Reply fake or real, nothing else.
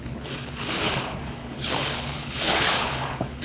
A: fake